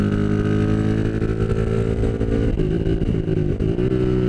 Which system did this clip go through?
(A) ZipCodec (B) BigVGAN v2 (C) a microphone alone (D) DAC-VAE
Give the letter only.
C